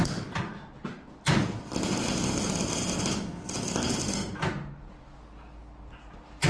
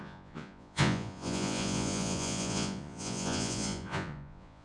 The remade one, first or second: second